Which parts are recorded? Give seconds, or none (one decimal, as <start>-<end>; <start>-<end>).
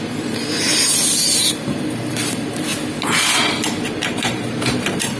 2.7-3.8